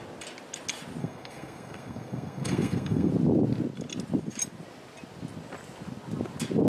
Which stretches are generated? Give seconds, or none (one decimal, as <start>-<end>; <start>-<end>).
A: 1.0-3.1